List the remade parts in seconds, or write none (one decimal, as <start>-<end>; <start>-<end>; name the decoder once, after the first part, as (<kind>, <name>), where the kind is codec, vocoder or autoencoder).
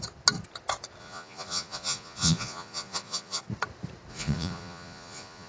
1.0-3.4 (vocoder, Vocos); 4.1-5.5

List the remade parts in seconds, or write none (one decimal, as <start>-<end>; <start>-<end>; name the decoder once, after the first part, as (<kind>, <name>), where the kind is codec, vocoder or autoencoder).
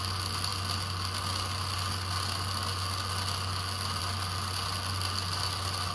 none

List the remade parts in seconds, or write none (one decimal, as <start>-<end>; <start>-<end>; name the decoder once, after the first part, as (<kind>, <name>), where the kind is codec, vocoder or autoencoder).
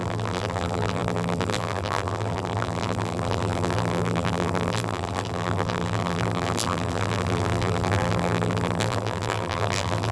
0.0-10.1 (vocoder, BigVGAN v2)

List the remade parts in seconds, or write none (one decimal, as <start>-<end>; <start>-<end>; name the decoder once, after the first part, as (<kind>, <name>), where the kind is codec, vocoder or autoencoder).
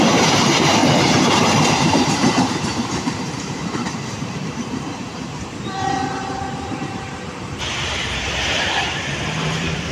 0.0-0.8 (vocoder, BigVGAN v2); 1.7-9.9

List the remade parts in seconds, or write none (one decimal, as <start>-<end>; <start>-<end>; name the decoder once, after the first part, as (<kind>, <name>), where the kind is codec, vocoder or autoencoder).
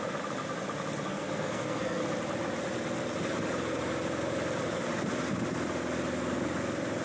1.1-2.0 (codec, SNAC)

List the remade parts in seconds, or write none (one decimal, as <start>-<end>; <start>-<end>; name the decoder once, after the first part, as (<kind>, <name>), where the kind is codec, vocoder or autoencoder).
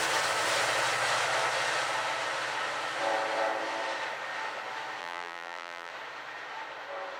5.0-5.9 (vocoder, BigVGAN v2)